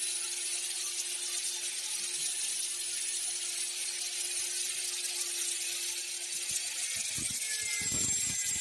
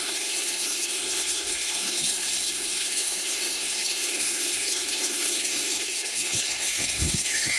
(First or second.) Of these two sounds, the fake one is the second